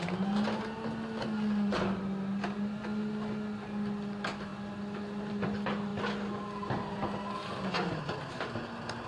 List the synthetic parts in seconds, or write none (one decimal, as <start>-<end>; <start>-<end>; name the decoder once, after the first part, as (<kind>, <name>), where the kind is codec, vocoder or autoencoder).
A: none